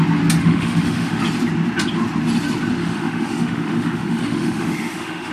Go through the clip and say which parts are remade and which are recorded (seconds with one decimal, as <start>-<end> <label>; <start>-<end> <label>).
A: 0.0-0.4 recorded; 0.4-1.2 remade; 1.2-2.8 recorded; 2.8-5.3 remade